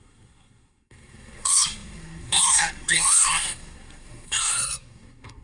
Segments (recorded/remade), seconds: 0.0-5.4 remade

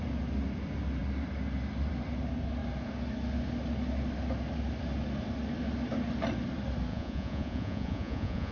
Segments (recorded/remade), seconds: 0.0-6.9 recorded; 6.9-8.5 remade

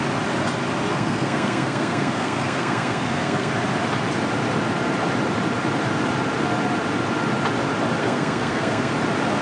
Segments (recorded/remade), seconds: 0.0-0.9 recorded; 0.9-3.5 remade; 3.5-8.0 recorded; 8.0-8.9 remade; 8.9-9.4 recorded

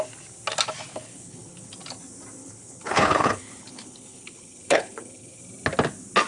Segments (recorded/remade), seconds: 0.0-0.9 recorded; 0.9-1.7 remade; 1.7-2.4 recorded; 2.4-5.4 remade; 5.4-6.3 recorded

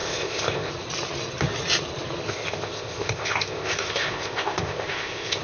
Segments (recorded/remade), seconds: 0.0-0.7 remade; 0.7-2.3 recorded; 2.3-5.4 remade

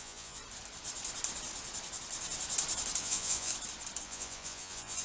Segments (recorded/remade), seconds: 0.0-0.4 remade; 0.4-3.0 recorded; 3.0-3.5 remade; 3.5-4.0 recorded; 4.0-5.0 remade

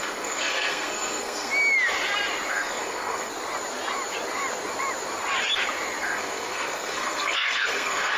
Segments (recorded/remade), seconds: 0.0-1.5 remade; 1.5-2.5 recorded; 2.5-3.3 remade; 3.3-6.0 recorded; 6.0-8.2 remade

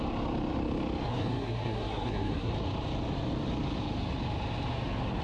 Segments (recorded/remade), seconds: 0.0-1.1 recorded; 1.1-2.5 remade; 2.5-5.2 recorded